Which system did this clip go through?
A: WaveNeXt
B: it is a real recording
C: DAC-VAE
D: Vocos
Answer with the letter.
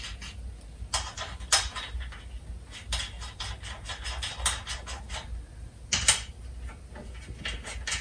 B